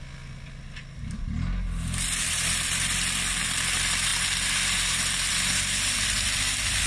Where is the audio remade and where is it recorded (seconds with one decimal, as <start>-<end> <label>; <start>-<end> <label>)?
0.0-6.9 recorded